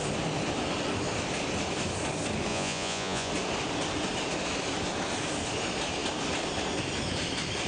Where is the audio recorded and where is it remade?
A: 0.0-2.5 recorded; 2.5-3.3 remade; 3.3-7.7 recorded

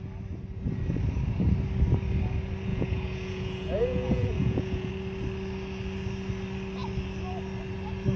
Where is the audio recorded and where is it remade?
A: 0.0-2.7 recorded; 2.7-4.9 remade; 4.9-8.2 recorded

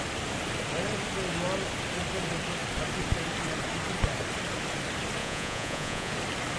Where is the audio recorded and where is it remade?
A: 0.0-5.2 recorded; 5.2-6.1 remade; 6.1-6.6 recorded